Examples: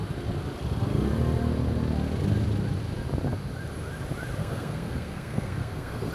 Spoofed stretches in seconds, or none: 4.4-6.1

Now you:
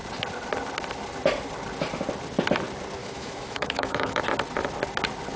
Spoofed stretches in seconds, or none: 3.0-4.2

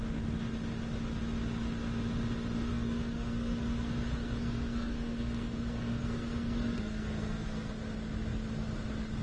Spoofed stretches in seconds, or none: 2.7-7.7

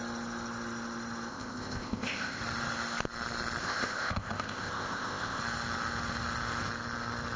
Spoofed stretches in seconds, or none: 1.3-2.4; 3.6-5.4

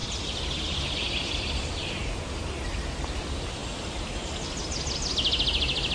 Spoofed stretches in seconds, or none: 0.0-1.7